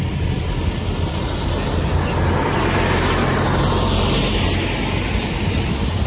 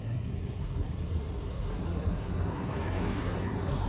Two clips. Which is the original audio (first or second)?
first